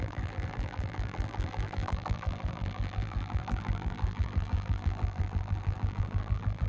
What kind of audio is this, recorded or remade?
remade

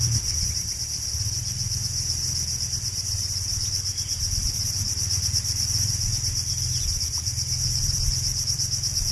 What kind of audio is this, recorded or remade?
remade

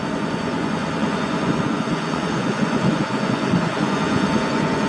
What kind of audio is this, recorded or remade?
remade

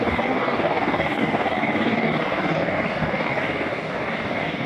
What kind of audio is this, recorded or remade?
remade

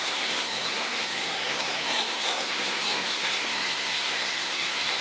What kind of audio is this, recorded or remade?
remade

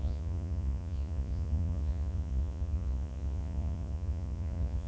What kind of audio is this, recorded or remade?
remade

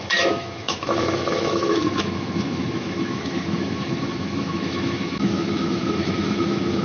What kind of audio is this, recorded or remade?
remade